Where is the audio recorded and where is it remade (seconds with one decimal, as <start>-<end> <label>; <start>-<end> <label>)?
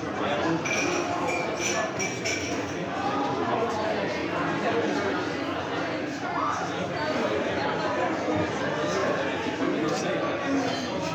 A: 0.0-11.1 recorded